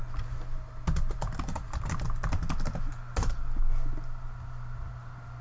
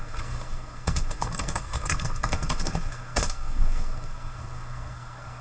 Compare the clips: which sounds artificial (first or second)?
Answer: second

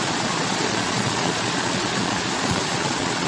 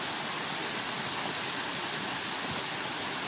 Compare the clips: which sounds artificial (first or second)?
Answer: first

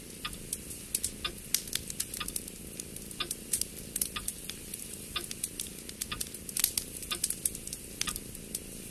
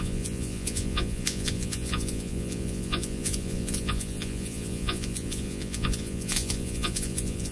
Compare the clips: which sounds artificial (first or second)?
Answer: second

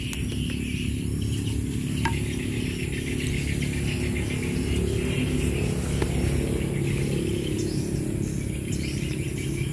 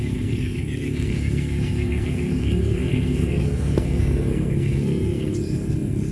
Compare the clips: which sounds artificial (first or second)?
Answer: second